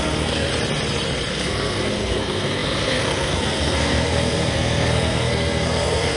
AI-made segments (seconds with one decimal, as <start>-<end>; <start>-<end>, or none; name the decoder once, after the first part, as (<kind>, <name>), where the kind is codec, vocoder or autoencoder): 0.0-0.5 (codec, SNAC); 1.3-6.2